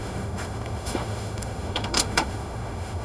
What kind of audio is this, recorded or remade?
remade